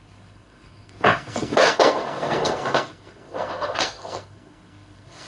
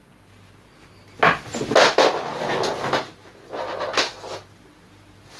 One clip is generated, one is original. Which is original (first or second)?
second